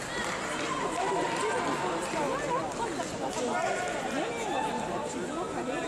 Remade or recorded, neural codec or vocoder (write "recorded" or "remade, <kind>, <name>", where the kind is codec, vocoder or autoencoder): recorded